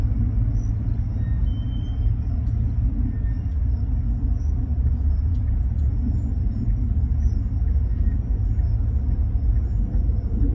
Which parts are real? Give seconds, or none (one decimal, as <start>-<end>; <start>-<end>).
0.0-4.7; 8.1-10.5